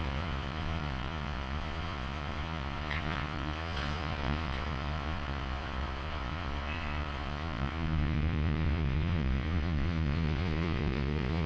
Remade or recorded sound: remade